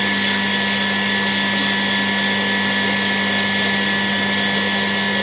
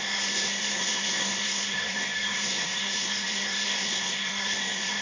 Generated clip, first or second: second